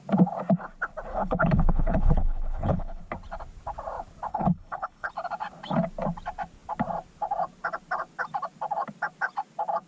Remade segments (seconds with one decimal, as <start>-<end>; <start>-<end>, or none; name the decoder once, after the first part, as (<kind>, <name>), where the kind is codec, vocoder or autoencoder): 1.1-3.0 (codec, HILCodec); 4.3-5.1